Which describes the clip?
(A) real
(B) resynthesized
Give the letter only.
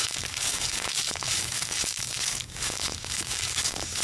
B